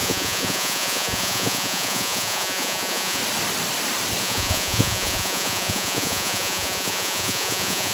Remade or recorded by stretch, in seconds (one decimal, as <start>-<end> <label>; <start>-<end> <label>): 0.0-3.2 remade; 3.2-4.2 recorded; 4.2-7.9 remade